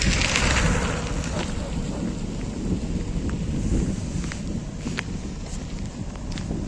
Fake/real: real